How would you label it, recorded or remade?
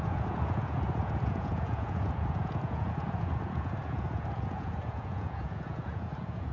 remade